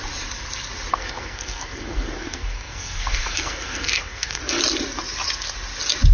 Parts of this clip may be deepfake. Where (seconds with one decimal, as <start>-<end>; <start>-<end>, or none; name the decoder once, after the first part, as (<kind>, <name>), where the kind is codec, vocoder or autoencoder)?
0.9-4.6 (codec, SNAC)